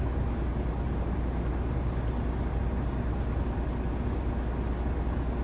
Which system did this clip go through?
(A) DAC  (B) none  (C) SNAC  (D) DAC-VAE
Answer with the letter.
B